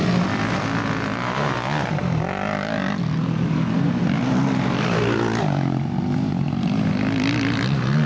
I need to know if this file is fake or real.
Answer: real